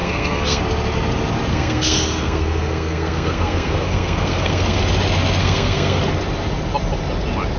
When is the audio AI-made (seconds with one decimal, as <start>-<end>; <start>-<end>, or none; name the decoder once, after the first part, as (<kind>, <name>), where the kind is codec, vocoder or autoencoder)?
0.0-0.6 (codec, SNAC); 1.5-4.8; 5.4-6.0